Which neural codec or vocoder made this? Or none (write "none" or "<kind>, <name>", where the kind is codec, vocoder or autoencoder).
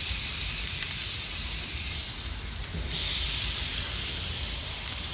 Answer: vocoder, BigVGAN v2